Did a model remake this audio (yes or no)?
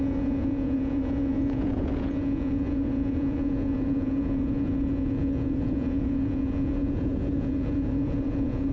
yes